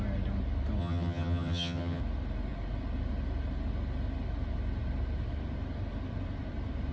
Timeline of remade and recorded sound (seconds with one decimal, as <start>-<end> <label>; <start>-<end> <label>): 0.0-0.8 recorded; 0.8-2.0 remade; 2.0-6.9 recorded

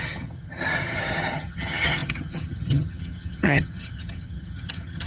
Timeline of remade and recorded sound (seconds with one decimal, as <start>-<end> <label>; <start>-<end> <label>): 0.0-5.1 remade

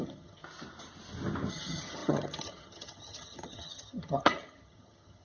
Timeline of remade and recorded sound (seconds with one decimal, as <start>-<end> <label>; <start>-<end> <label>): 0.0-0.4 remade; 0.4-1.5 recorded; 1.5-5.2 remade

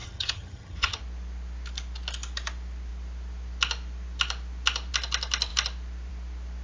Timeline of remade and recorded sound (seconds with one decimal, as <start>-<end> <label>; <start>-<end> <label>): 0.0-1.0 remade; 1.0-6.6 recorded

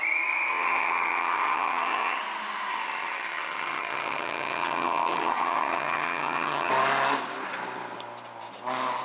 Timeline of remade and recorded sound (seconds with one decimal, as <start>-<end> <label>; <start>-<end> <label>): 0.0-0.5 recorded; 0.5-2.2 remade; 2.2-2.7 recorded; 2.7-6.7 remade; 6.7-9.0 recorded